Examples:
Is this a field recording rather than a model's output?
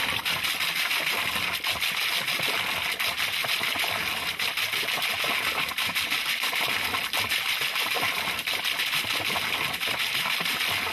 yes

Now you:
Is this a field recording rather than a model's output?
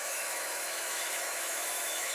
no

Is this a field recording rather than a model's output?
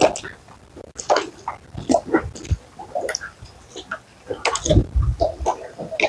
yes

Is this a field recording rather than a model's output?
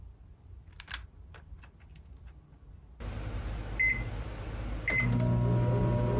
yes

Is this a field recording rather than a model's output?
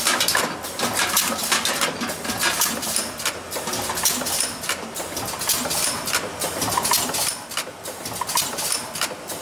yes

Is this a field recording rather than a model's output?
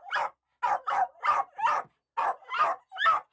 yes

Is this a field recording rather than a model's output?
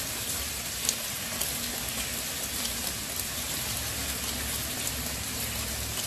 yes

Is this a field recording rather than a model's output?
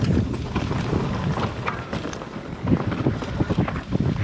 yes